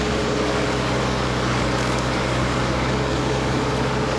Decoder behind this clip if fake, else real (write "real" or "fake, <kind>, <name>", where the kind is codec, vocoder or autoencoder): fake, codec, DAC